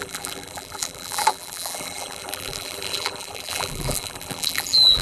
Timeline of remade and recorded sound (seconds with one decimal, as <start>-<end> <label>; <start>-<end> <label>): 0.0-5.0 remade